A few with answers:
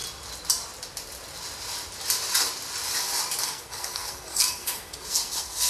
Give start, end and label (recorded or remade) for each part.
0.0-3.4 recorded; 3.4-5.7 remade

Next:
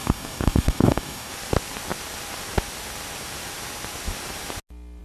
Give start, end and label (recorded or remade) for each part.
0.0-1.3 remade; 1.3-5.0 recorded

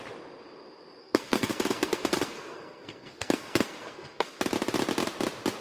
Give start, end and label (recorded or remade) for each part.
0.0-1.0 recorded; 1.0-4.4 remade; 4.4-5.6 recorded

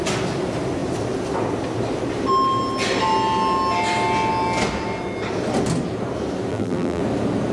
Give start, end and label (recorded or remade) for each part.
0.0-6.5 recorded; 6.5-7.0 remade; 7.0-7.5 recorded

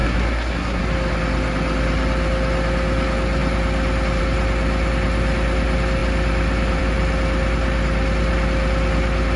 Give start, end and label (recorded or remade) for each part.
0.0-0.8 remade; 0.8-9.4 recorded

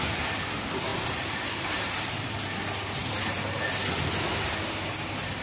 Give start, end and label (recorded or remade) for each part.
0.0-0.9 recorded; 0.9-2.4 remade; 2.4-5.4 recorded

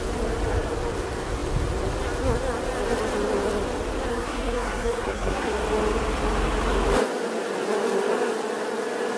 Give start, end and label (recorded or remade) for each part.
0.0-4.1 recorded; 4.1-5.6 remade; 5.6-9.2 recorded